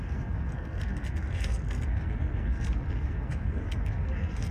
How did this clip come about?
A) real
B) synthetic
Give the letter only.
B